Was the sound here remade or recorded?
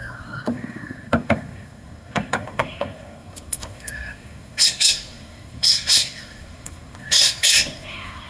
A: remade